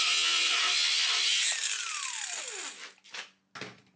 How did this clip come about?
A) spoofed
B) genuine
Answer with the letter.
B